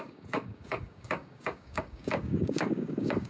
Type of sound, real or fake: fake